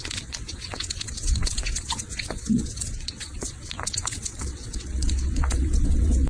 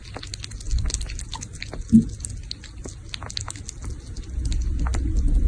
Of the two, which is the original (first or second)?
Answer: second